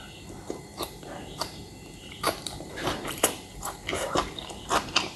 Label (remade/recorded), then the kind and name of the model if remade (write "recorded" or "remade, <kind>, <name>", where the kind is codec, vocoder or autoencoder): remade, vocoder, BigVGAN v2